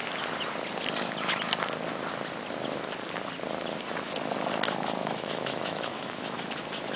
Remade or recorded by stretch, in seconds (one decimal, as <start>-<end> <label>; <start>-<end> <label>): 0.0-5.0 recorded; 5.0-6.4 remade; 6.4-7.0 recorded